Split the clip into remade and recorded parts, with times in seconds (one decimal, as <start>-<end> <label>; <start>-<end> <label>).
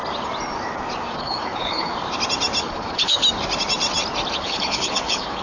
0.0-1.2 recorded; 1.2-1.9 remade; 1.9-2.6 recorded; 2.6-3.2 remade; 3.2-4.4 recorded; 4.4-5.4 remade